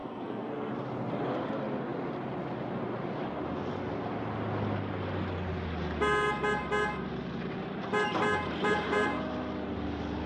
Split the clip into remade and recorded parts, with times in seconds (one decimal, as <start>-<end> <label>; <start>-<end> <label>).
0.0-0.5 remade; 0.5-10.3 recorded